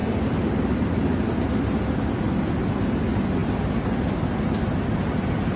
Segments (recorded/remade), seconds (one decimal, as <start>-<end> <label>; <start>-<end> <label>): 0.0-5.6 recorded